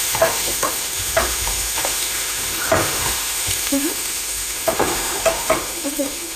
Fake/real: fake